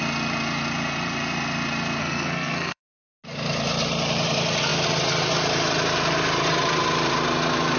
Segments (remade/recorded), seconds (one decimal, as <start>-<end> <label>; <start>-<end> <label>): 0.0-2.0 recorded; 2.0-2.8 remade; 2.8-7.8 recorded